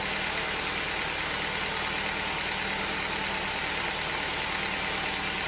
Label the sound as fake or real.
real